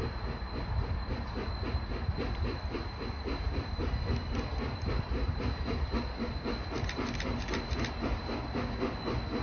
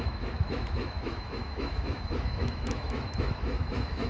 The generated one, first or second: second